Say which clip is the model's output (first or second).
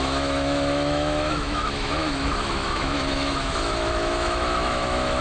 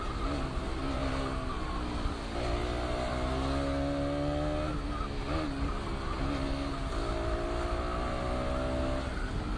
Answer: first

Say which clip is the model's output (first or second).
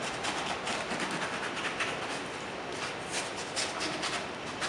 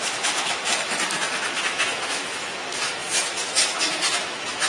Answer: second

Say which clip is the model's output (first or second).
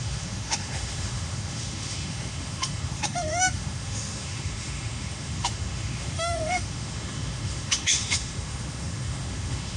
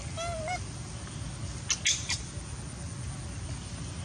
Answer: first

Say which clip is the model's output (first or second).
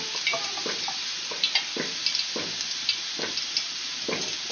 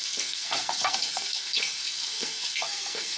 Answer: second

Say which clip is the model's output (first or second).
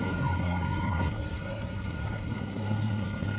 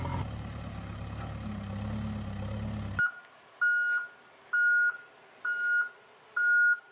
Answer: first